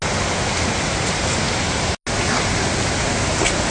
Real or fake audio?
real